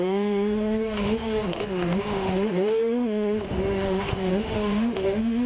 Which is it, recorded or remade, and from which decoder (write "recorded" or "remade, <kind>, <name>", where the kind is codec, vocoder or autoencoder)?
remade, autoencoder, DAC-VAE